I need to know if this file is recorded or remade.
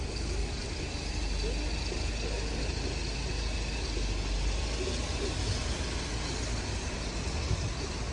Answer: recorded